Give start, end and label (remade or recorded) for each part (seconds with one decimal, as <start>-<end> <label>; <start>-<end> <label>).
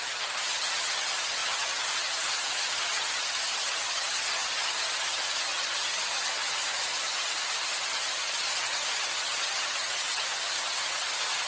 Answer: 0.0-11.5 remade